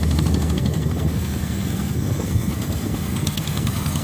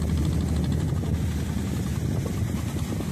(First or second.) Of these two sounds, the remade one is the first